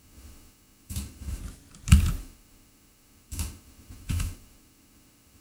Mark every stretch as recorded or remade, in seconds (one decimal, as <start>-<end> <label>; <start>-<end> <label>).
0.0-1.4 remade; 1.4-2.2 recorded; 2.2-5.4 remade